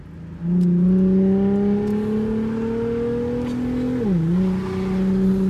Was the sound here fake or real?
real